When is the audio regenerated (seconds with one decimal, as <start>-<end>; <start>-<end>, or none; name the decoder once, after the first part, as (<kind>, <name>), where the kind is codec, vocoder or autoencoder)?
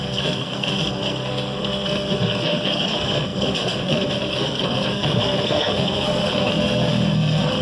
0.0-7.6 (codec, SNAC)